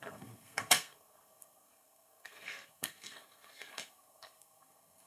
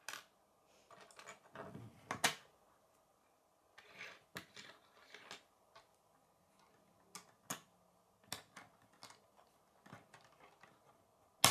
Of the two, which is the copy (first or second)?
first